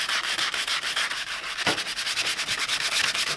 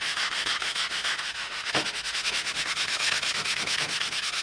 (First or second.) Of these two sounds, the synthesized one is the second